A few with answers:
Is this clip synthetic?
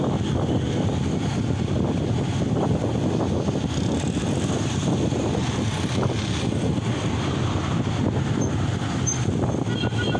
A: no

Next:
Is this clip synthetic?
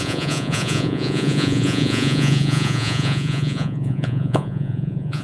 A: yes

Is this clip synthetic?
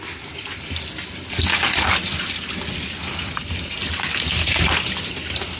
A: no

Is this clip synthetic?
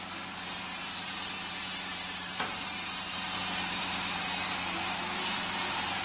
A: yes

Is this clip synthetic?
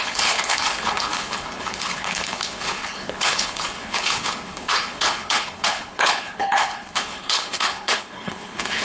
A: yes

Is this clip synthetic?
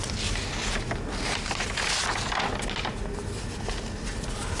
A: no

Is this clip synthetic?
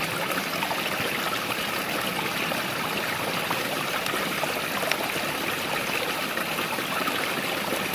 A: no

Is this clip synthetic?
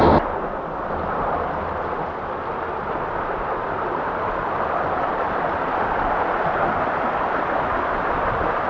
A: no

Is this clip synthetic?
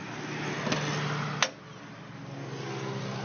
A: no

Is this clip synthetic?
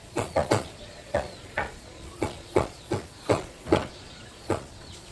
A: yes